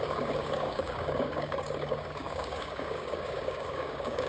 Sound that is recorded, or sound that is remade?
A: remade